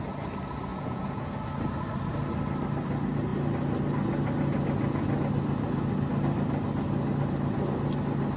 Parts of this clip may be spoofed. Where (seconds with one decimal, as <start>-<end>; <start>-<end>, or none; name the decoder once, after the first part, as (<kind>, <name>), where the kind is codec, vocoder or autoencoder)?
0.7-1.3 (vocoder, Vocos)